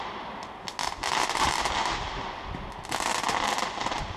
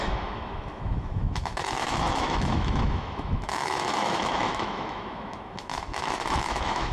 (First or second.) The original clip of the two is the first